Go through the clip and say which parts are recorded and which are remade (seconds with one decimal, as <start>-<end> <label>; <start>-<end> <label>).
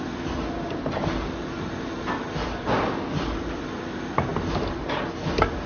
0.0-5.7 recorded